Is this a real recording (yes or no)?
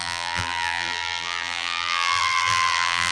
no